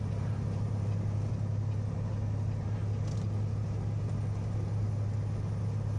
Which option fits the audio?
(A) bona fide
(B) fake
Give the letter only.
A